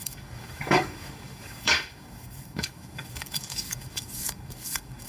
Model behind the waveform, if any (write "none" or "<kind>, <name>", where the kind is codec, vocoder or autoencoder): codec, DAC